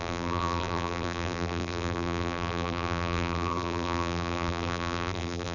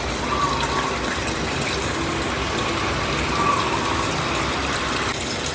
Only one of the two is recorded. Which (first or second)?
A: second